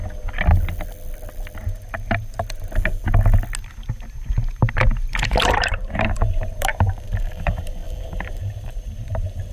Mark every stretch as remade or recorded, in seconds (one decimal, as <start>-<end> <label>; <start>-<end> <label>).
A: 0.0-5.2 recorded; 5.2-7.8 remade; 7.8-8.7 recorded; 8.7-9.5 remade